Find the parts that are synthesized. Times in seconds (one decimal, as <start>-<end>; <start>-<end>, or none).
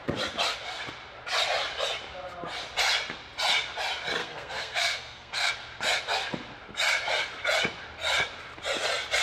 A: 4.2-5.5